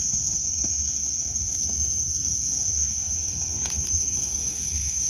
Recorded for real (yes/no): no